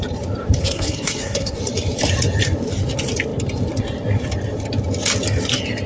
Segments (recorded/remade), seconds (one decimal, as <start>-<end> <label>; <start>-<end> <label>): 0.0-0.6 recorded; 0.6-1.6 remade; 1.6-5.9 recorded

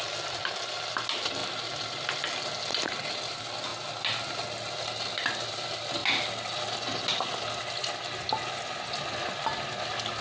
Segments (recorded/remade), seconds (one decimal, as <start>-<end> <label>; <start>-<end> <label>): 0.0-10.2 recorded

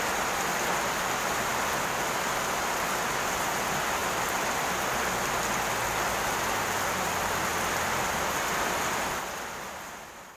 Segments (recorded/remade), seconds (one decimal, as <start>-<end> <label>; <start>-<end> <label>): 0.0-10.4 recorded

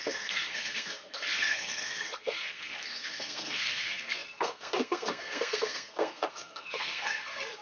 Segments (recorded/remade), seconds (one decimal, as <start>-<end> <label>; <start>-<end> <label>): 0.0-7.6 remade